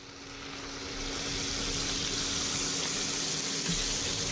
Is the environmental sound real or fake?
real